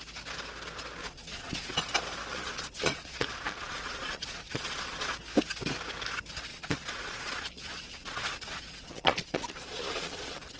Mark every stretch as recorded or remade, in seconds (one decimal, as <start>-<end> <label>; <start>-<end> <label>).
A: 0.0-1.0 recorded; 1.0-1.7 remade; 1.7-2.3 recorded; 2.3-5.1 remade; 5.1-6.5 recorded; 6.5-10.6 remade